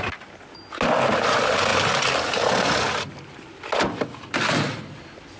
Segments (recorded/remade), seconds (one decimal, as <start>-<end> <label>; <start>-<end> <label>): 0.0-5.4 recorded